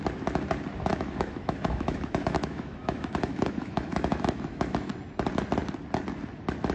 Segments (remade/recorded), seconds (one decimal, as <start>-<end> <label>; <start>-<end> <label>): 0.0-0.9 recorded; 0.9-4.9 remade; 4.9-6.7 recorded